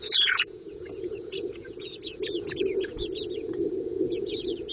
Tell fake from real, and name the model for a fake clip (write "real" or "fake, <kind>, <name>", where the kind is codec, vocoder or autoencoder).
fake, vocoder, Vocos